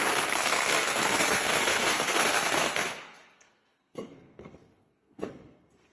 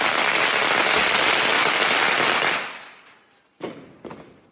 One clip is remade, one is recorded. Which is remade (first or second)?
first